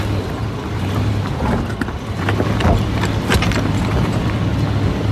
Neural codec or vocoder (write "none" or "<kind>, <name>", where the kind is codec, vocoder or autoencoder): none